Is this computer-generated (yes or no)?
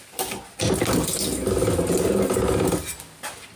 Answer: no